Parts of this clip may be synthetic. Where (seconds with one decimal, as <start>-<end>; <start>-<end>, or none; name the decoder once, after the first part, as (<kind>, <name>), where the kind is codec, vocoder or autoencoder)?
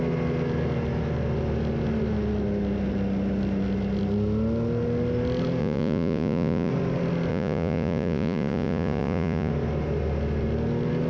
5.6-6.7 (vocoder, Vocos); 7.3-9.5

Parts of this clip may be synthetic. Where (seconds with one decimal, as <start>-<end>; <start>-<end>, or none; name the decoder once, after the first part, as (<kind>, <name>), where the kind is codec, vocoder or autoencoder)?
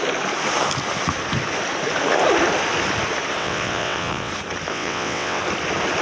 3.4-4.3 (vocoder, WaveNeXt); 4.7-5.4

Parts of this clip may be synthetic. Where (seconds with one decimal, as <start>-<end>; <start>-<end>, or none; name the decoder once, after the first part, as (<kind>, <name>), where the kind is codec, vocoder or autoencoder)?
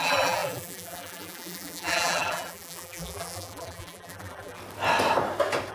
0.0-4.6 (vocoder, BigVGAN v2)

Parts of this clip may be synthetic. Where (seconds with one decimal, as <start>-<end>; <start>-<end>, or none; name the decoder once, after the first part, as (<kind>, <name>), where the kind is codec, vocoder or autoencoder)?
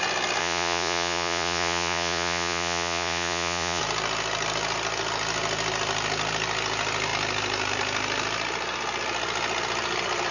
0.4-3.8 (vocoder, Vocos)